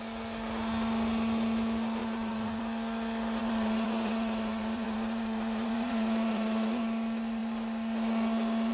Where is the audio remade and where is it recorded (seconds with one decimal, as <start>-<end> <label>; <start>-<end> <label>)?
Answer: 0.0-2.0 recorded; 2.0-2.6 remade; 2.6-3.4 recorded; 3.4-6.8 remade; 6.8-8.7 recorded